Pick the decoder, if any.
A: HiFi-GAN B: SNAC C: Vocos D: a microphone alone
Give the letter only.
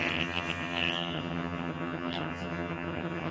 A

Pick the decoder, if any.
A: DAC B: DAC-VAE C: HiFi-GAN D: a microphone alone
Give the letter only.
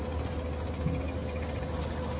D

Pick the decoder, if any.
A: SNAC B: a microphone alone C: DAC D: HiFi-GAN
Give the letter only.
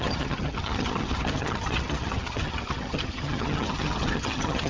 D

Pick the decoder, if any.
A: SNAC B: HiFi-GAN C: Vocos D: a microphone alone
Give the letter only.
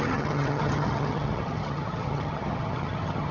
B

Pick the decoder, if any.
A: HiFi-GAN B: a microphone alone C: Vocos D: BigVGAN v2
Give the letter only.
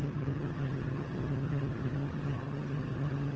A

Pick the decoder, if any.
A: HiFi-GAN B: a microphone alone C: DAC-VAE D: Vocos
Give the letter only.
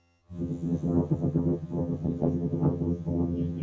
A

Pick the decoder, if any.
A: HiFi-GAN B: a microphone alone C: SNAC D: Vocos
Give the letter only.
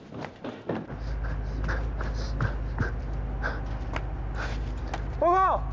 B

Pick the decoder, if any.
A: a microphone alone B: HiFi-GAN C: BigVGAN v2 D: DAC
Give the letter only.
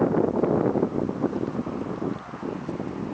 A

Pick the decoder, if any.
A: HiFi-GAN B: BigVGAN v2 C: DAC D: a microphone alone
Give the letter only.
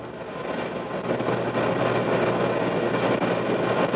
D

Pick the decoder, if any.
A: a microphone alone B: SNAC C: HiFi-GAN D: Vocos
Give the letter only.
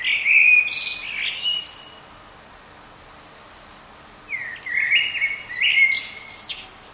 A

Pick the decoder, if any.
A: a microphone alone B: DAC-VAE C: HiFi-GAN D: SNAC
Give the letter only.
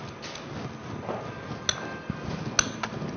A